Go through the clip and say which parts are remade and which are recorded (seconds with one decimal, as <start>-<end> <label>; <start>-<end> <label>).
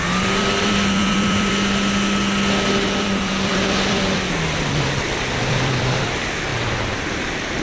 0.0-1.5 remade; 1.5-3.0 recorded; 3.0-7.6 remade